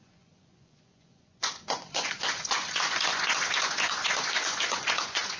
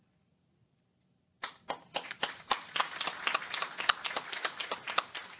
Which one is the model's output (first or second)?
first